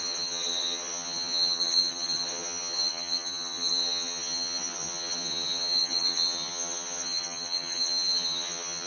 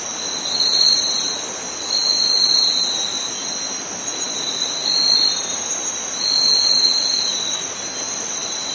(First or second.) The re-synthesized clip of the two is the first